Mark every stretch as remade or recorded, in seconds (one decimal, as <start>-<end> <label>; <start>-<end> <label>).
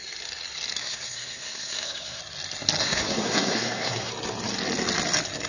0.0-0.8 recorded; 0.8-2.2 remade; 2.2-2.8 recorded; 2.8-4.1 remade; 4.1-5.5 recorded